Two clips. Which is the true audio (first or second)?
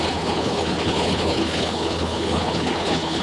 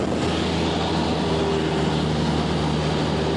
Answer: second